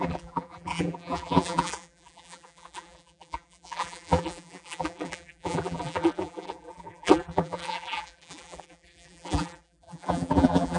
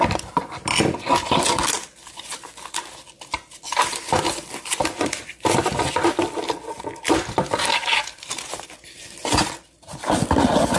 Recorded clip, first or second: second